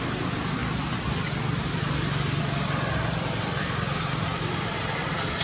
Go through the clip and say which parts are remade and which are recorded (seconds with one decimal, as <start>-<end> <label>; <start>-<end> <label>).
0.0-0.6 remade; 0.6-2.4 recorded; 2.4-5.4 remade